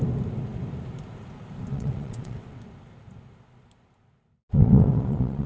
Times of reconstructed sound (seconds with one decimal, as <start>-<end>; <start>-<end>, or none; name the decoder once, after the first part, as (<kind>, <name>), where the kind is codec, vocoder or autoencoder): 1.7-2.6 (vocoder, WaveNeXt); 4.5-5.5